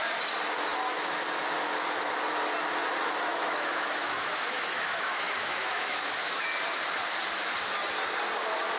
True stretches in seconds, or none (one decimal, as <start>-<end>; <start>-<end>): 0.0-3.3; 6.4-8.8